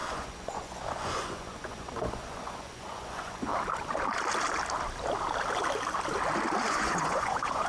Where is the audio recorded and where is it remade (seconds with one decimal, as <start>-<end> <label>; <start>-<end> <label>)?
0.0-3.5 remade; 3.5-6.7 recorded; 6.7-7.7 remade